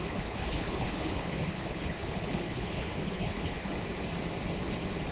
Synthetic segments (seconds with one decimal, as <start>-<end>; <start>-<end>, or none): 0.0-3.7